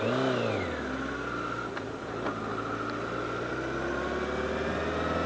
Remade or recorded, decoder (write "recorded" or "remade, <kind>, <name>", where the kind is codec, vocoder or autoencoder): recorded